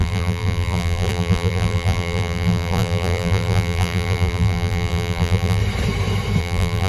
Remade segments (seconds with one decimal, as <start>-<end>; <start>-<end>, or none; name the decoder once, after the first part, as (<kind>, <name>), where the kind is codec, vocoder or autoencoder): 0.0-5.6 (vocoder, BigVGAN v2); 6.4-6.9